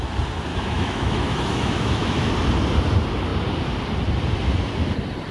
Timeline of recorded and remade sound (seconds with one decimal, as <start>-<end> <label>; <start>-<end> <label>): 0.0-0.5 recorded; 0.5-2.3 remade; 2.3-5.3 recorded